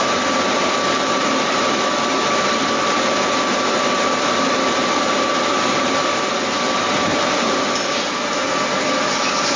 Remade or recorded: recorded